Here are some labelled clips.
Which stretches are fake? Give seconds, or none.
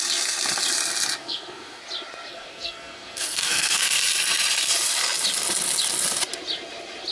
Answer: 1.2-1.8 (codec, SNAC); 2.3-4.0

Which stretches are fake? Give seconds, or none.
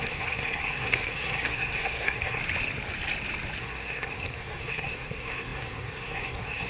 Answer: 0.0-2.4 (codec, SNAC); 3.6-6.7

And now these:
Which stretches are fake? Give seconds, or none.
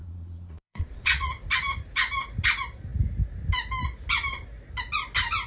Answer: 0.0-1.3 (vocoder, Vocos)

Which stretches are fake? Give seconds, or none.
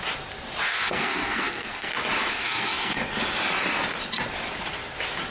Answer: 0.7-1.9 (codec, SNAC); 2.3-3.0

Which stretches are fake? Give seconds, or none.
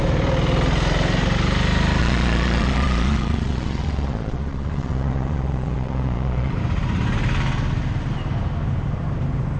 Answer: 2.0-6.5 (vocoder, Vocos)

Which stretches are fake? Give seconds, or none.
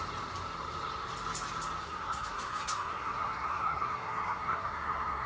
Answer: 1.8-5.3 (codec, SNAC)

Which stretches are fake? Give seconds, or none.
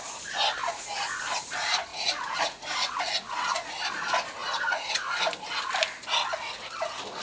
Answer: 0.6-1.3 (vocoder, Vocos); 1.9-3.7; 4.4-5.1